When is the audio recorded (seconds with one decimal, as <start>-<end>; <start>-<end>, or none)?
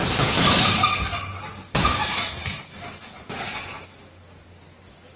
0.0-5.2